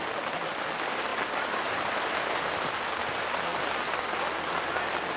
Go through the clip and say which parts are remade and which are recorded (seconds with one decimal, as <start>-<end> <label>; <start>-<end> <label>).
0.0-5.2 recorded